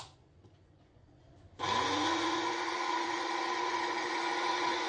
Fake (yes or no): yes